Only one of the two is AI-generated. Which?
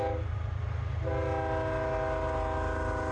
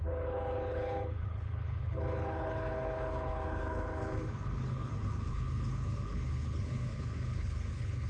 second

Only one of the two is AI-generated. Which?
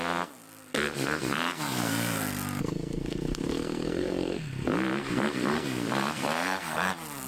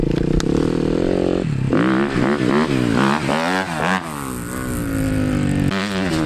first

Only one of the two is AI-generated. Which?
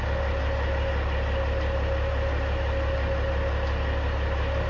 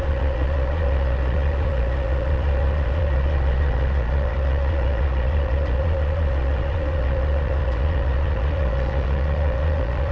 second